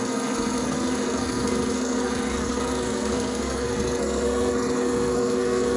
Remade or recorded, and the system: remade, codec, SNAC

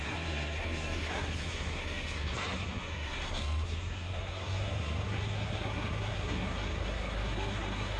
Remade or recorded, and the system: remade, codec, SNAC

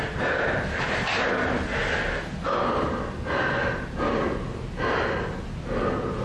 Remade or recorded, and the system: recorded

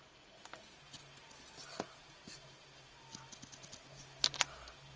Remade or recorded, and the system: recorded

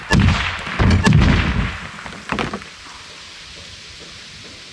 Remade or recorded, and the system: recorded